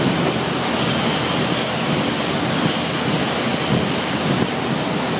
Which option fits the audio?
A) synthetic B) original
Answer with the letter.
B